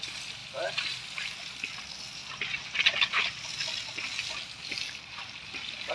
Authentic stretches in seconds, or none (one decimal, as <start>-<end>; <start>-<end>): 0.0-0.4; 1.8-5.9